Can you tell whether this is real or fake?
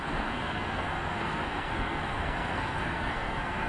fake